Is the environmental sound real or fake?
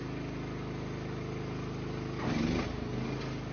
real